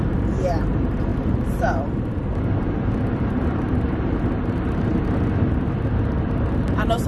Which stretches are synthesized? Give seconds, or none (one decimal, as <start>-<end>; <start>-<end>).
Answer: 0.0-2.3; 3.3-4.9; 6.0-7.1